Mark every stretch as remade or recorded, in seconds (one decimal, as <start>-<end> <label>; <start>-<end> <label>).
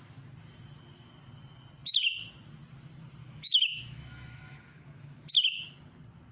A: 0.0-3.2 recorded; 3.2-5.3 remade; 5.3-6.3 recorded